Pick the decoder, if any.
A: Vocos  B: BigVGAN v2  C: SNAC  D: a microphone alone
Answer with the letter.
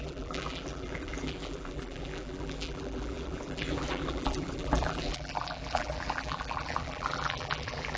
B